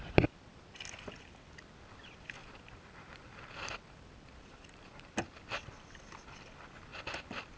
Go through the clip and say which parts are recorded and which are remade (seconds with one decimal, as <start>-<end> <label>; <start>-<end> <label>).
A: 0.0-0.5 recorded; 0.5-1.1 remade; 1.1-2.4 recorded; 2.4-5.1 remade; 5.1-7.6 recorded